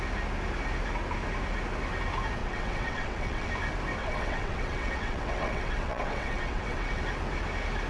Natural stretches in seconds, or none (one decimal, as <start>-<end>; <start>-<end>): 0.0-2.4; 3.5-4.0; 7.0-7.9